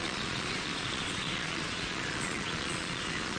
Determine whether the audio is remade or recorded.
remade